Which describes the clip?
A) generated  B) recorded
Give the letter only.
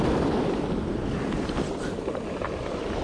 B